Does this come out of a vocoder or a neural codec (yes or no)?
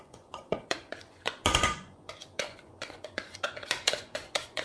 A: yes